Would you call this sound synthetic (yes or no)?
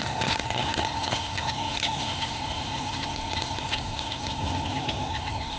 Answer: yes